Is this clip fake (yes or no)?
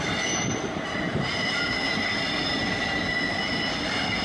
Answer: no